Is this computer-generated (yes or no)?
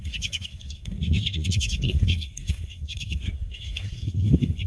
yes